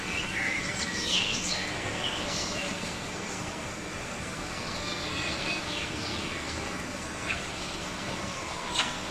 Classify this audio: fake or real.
fake